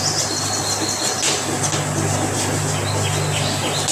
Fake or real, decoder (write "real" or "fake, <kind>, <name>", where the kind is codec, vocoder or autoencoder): real